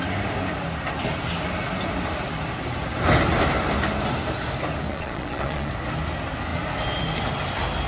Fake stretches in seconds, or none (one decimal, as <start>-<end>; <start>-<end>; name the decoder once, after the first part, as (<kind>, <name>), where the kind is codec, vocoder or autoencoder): 4.9-5.7 (vocoder, Vocos)